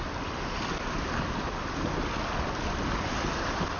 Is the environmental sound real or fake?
real